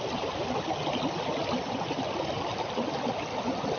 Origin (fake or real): real